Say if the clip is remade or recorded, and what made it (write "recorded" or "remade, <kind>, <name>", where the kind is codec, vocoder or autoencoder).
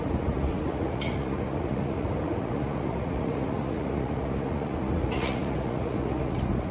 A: remade, vocoder, Vocos